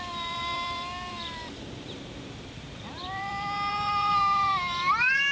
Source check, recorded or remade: remade